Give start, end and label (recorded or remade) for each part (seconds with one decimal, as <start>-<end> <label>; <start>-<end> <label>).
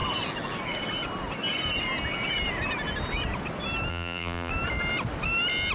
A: 0.0-3.9 recorded; 3.9-4.5 remade; 4.5-5.7 recorded